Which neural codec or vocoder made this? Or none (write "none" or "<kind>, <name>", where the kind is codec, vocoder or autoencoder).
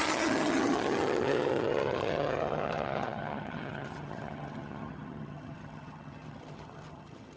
vocoder, HiFi-GAN